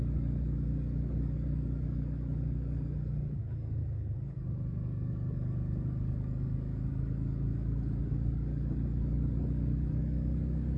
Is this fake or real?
fake